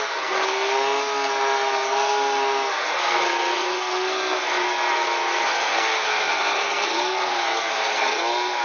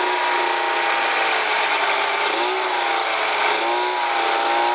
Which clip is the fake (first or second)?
first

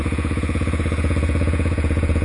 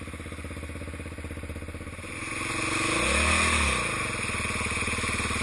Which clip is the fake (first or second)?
first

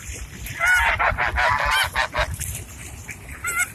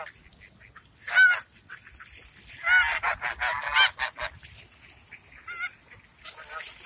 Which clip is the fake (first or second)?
first